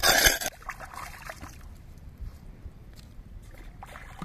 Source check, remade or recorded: remade